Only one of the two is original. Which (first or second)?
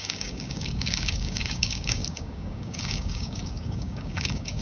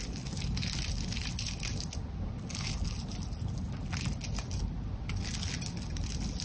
second